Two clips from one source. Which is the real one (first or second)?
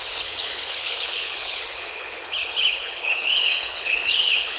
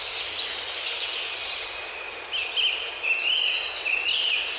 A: second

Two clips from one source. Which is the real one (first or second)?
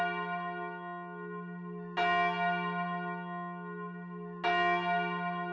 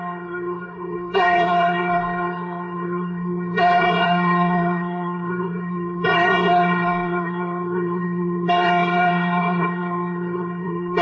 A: first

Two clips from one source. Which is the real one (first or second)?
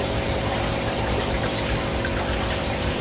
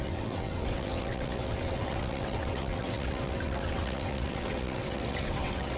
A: first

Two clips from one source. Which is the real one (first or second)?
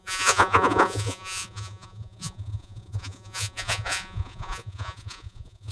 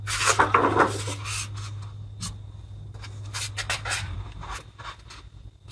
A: second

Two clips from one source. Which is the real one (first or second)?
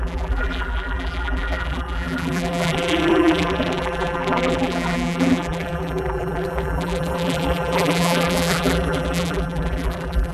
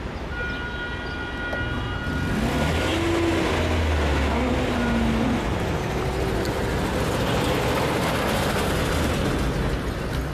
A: second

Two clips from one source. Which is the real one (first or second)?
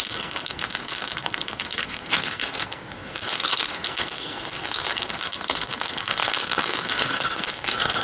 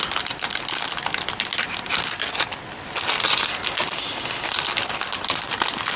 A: second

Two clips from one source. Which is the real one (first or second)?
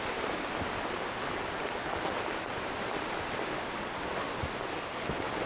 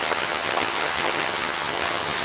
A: first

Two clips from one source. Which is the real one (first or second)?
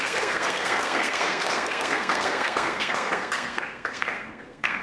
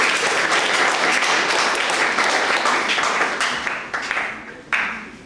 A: second